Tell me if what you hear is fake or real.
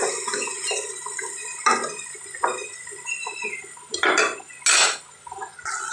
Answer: real